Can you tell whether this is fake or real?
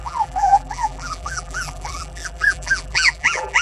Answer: fake